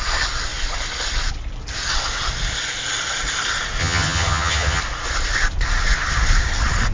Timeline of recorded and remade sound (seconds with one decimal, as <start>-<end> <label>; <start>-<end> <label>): 0.0-3.8 recorded; 3.8-4.8 remade; 4.8-6.9 recorded